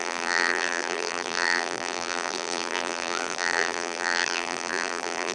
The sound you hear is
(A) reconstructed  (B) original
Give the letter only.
A